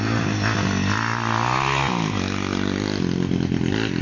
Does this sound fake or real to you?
real